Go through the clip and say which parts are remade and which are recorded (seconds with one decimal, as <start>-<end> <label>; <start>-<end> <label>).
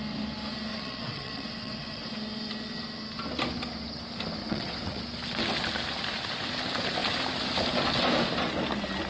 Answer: 0.0-0.7 recorded; 0.7-2.1 remade; 2.1-4.4 recorded; 4.4-5.0 remade; 5.0-9.1 recorded